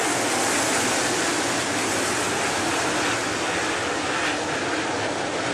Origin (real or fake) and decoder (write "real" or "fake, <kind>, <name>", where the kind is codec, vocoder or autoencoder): real